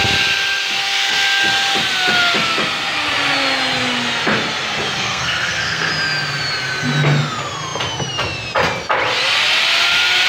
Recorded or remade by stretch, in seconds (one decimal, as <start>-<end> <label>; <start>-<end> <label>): 0.0-0.8 recorded; 0.8-1.5 remade; 1.5-5.0 recorded; 5.0-5.9 remade; 5.9-10.3 recorded